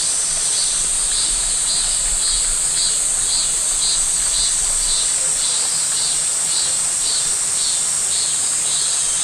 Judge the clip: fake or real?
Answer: real